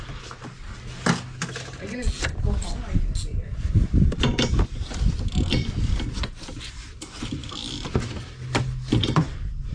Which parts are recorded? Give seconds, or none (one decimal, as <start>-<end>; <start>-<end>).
0.0-9.7